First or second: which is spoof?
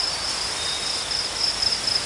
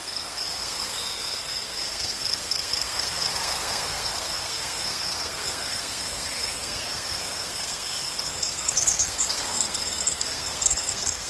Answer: second